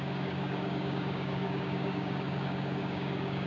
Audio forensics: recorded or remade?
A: remade